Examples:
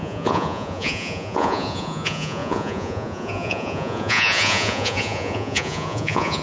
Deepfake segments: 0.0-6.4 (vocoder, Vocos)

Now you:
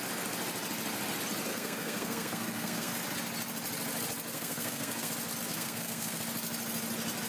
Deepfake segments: 1.5-2.9 (codec, SNAC); 4.3-5.1; 5.5-6.2

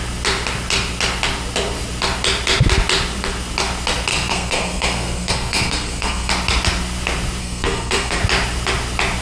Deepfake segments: 4.1-6.3 (codec, SNAC); 7.4-8.2

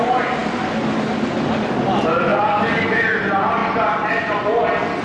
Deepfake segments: 2.3-3.0 (codec, DAC)

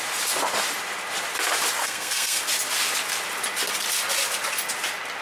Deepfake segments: 1.8-2.4 (codec, SNAC)